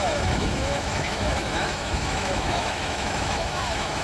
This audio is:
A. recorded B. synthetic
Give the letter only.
B